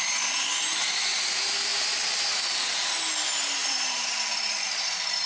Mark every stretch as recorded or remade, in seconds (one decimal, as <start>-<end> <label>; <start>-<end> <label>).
0.0-3.6 recorded; 3.6-5.3 remade